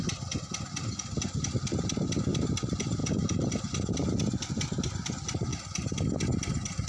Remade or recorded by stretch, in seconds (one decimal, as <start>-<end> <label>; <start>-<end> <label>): 0.0-6.9 recorded